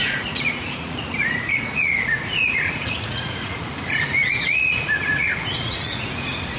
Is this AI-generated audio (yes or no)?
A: yes